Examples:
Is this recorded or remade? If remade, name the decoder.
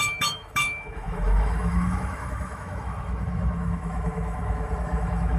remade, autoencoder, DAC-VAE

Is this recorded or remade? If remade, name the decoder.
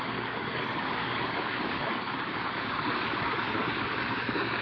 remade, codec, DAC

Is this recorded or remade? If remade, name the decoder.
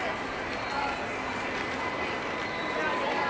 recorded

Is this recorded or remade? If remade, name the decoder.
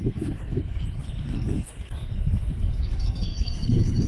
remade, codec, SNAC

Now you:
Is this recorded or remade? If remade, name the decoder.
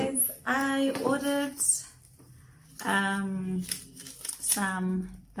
recorded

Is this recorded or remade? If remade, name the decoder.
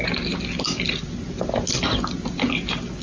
recorded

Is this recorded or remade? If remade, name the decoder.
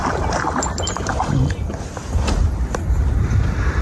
remade, vocoder, BigVGAN v2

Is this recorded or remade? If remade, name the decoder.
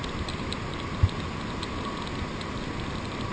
recorded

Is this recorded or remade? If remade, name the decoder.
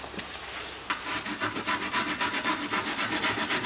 recorded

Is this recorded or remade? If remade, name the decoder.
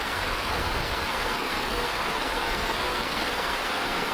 remade, codec, SNAC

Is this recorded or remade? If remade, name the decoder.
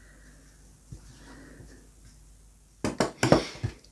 recorded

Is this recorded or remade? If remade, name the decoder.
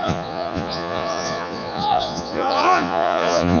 remade, vocoder, Vocos